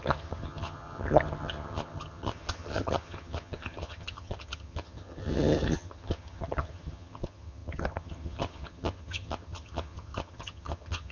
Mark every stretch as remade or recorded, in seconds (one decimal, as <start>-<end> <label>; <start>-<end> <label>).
0.0-11.1 remade